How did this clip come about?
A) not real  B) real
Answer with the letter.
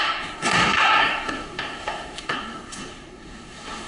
A